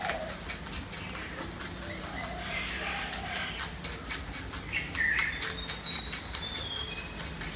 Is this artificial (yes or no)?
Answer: no